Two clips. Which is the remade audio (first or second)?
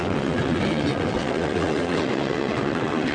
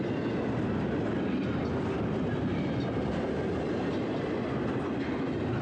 first